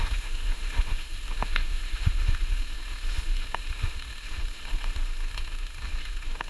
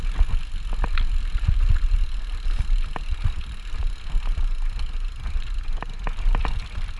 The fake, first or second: first